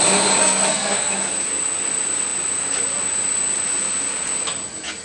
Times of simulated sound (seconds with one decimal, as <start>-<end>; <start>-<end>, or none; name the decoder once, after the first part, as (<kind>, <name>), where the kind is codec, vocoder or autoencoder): 0.4-1.1 (codec, SNAC)